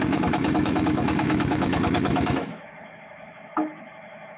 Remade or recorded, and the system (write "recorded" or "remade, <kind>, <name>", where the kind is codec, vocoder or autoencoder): remade, autoencoder, DAC-VAE